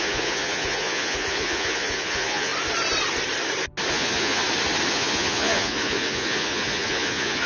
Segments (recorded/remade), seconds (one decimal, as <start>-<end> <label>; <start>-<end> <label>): 0.0-2.5 remade; 2.5-3.9 recorded; 3.9-4.4 remade; 4.4-4.9 recorded; 4.9-7.5 remade